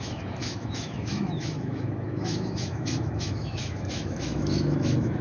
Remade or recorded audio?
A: remade